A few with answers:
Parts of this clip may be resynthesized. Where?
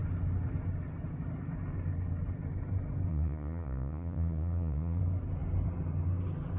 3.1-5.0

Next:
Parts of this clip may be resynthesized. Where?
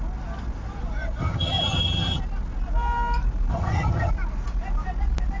1.2-2.2; 3.5-4.1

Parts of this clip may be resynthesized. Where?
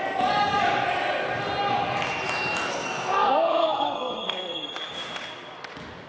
2.7-4.7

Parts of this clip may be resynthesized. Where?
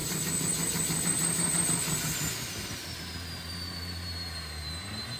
none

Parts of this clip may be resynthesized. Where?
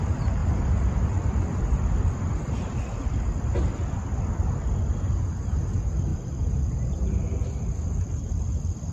0.4-2.5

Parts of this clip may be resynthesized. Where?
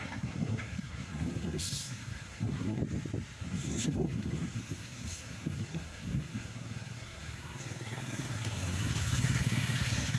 0.0-2.8; 3.4-10.2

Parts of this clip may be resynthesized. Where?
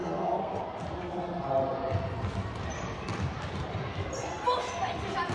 0.0-0.6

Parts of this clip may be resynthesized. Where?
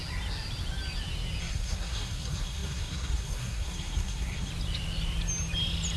1.4-4.5